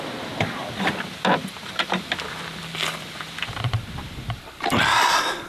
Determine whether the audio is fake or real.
fake